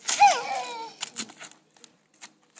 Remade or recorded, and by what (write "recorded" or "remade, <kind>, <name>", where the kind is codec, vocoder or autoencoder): recorded